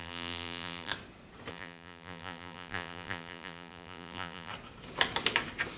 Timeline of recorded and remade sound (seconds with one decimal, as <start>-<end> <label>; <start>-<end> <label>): 0.0-0.9 remade; 0.9-1.5 recorded; 1.5-4.5 remade; 4.5-5.8 recorded